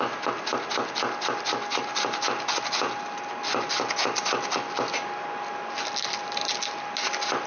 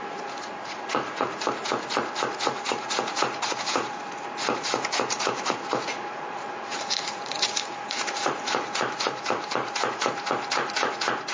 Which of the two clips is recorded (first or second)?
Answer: first